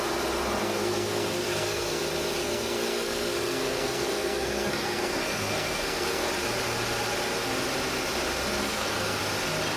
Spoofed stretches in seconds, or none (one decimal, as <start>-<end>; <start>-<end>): 0.6-2.0; 2.4-6.3; 8.6-9.2